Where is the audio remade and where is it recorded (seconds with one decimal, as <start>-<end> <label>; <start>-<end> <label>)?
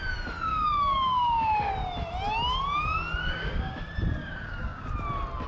0.0-0.5 recorded; 0.5-1.7 remade; 1.7-3.2 recorded; 3.2-3.8 remade; 3.8-4.2 recorded; 4.2-4.9 remade; 4.9-5.5 recorded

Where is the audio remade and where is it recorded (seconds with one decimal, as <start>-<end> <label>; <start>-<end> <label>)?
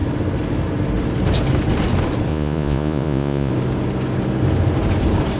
0.0-2.3 recorded; 2.3-3.5 remade; 3.5-5.4 recorded